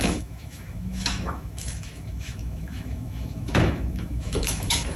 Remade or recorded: remade